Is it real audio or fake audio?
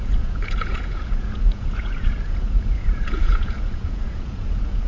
fake